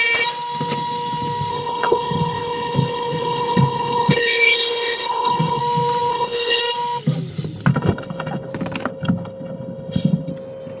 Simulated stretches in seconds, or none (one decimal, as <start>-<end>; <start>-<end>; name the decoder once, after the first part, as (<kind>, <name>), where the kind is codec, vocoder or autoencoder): 1.5-5.6 (codec, HILCodec); 6.1-6.6; 7.7-8.5; 8.9-10.3